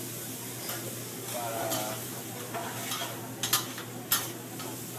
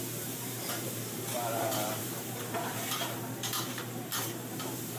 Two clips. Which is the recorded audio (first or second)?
first